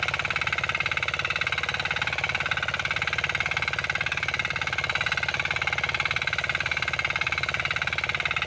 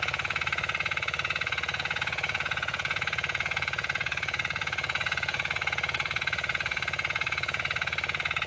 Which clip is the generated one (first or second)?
second